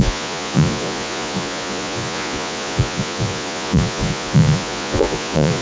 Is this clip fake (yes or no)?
yes